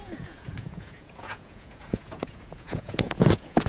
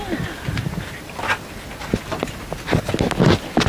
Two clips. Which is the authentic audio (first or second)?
second